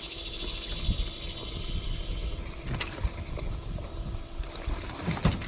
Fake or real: real